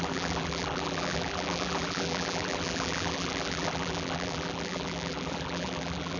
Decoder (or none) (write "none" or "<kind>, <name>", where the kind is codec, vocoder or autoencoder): vocoder, BigVGAN v2